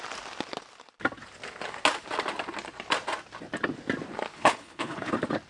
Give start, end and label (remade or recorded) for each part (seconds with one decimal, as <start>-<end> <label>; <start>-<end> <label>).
0.0-4.3 recorded; 4.3-5.1 remade; 5.1-5.5 recorded